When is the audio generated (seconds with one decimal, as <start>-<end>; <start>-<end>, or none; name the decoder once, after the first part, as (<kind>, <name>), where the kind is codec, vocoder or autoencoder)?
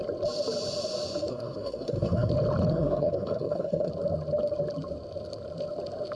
1.3-2.3 (codec, SNAC); 2.7-3.9